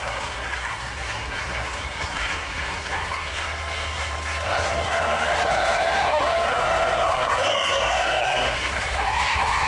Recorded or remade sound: remade